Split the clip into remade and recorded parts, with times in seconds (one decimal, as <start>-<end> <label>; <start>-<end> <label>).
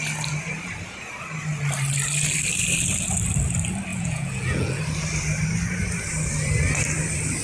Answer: 0.0-3.9 recorded; 3.9-4.8 remade; 4.8-7.4 recorded